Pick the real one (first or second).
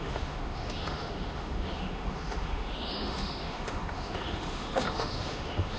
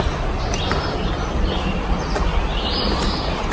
second